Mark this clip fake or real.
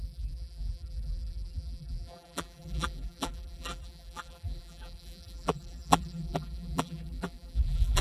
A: fake